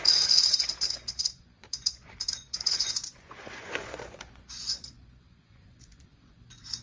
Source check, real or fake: fake